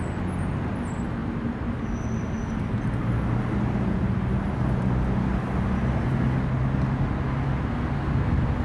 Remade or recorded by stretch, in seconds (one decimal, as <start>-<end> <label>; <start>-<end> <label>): 0.0-8.6 recorded